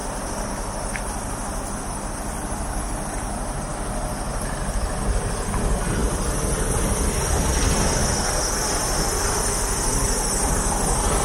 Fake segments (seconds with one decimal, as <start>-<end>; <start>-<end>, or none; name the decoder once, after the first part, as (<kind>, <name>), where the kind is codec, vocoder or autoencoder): none